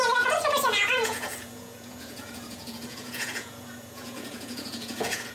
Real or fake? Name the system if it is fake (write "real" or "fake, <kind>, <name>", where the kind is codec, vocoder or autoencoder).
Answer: fake, vocoder, Vocos